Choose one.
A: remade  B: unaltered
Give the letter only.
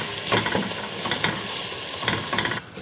B